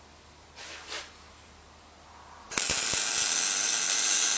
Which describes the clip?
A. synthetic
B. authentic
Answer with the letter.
B